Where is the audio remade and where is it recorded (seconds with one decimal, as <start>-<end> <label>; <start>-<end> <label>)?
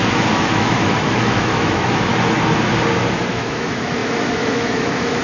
0.0-2.1 remade; 2.1-3.3 recorded; 3.3-5.2 remade